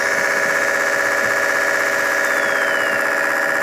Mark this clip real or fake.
real